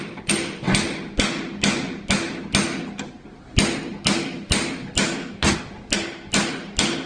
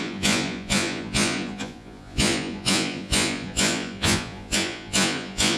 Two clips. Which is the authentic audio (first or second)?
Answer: first